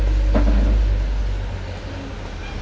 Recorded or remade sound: recorded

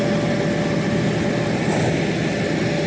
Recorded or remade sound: recorded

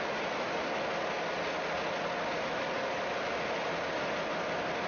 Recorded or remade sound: recorded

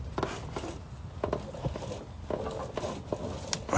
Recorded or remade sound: recorded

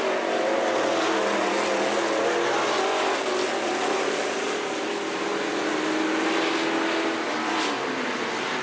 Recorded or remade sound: recorded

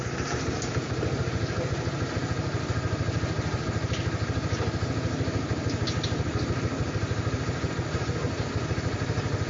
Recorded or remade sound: recorded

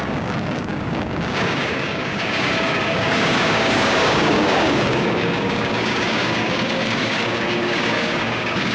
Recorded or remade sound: remade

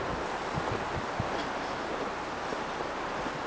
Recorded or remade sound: recorded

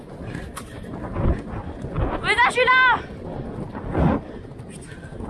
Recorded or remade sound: recorded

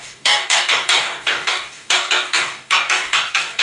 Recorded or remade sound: remade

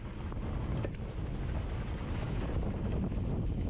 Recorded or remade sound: recorded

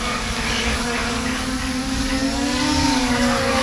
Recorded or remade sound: remade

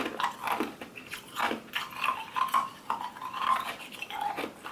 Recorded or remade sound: recorded